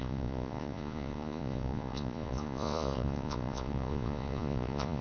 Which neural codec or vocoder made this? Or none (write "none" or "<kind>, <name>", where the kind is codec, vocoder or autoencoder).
vocoder, Vocos